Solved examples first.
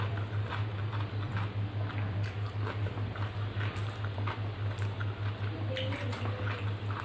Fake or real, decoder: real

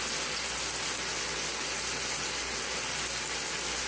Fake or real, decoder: real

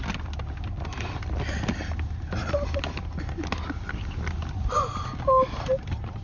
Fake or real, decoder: real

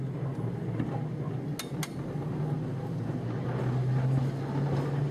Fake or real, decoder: real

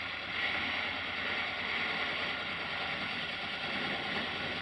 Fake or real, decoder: real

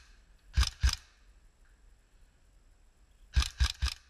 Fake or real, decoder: real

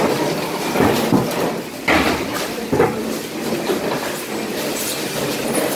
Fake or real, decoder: real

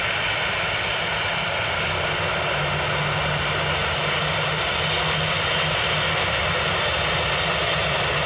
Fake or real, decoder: real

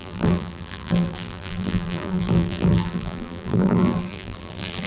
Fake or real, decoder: fake, vocoder, BigVGAN v2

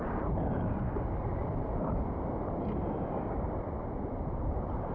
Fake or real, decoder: fake, vocoder, BigVGAN v2